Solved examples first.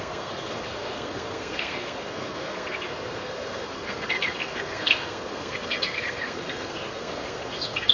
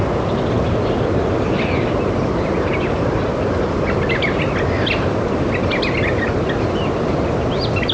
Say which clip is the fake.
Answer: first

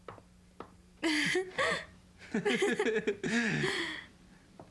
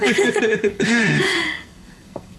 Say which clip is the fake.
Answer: second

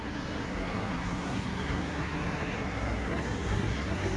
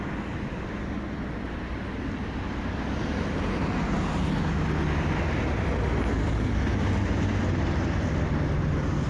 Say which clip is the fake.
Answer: first